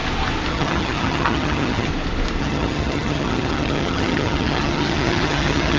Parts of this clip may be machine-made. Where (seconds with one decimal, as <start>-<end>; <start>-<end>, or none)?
0.5-1.9; 2.4-5.8